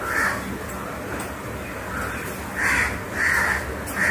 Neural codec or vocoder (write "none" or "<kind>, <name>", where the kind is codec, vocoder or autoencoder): none